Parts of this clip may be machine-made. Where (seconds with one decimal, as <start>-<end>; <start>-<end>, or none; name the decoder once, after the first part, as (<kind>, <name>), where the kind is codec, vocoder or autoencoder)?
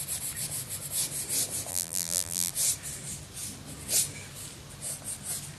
1.7-2.5 (vocoder, BigVGAN v2)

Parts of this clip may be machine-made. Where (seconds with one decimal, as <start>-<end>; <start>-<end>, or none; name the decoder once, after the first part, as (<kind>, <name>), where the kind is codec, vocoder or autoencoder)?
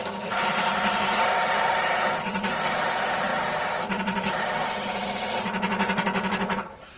none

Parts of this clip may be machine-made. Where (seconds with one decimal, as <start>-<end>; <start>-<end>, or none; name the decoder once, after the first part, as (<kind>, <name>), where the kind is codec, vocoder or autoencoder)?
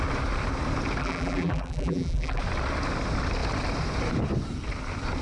1.0-2.4 (vocoder, BigVGAN v2)